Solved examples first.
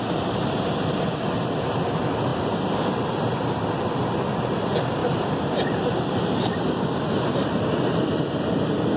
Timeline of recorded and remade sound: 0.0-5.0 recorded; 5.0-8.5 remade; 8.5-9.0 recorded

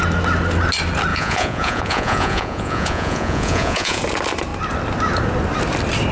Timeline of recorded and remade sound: 0.0-1.1 recorded; 1.1-4.0 remade; 4.0-6.1 recorded

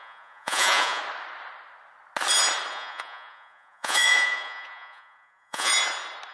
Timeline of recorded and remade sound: 0.0-1.0 remade; 1.0-2.7 recorded; 2.7-5.7 remade; 5.7-6.3 recorded

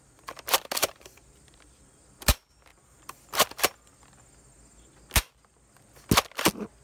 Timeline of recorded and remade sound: 0.0-0.8 recorded; 0.8-2.2 remade; 2.2-2.7 recorded; 2.7-3.6 remade; 3.6-6.8 recorded

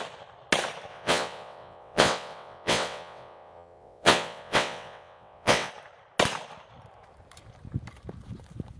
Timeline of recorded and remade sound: 0.0-0.9 recorded; 0.9-5.7 remade; 5.7-8.8 recorded

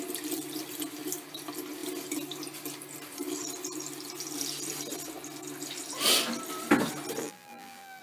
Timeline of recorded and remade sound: 0.0-7.2 recorded; 7.2-8.0 remade

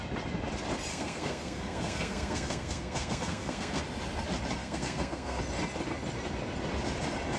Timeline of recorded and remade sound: 0.0-0.9 recorded; 0.9-3.8 remade; 3.8-4.6 recorded; 4.6-5.4 remade; 5.4-7.4 recorded

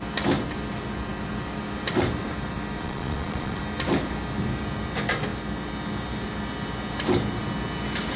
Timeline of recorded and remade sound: 0.0-2.8 recorded; 2.8-3.6 remade; 3.6-8.2 recorded